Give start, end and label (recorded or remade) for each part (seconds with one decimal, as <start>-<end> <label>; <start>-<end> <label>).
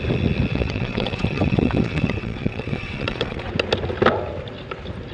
0.0-0.5 recorded; 0.5-3.5 remade; 3.5-5.1 recorded